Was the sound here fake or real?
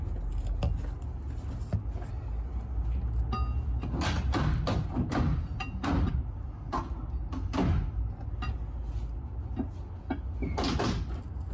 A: real